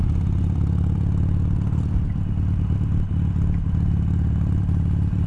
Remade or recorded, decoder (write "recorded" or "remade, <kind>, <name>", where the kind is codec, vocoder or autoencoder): remade, vocoder, BigVGAN v2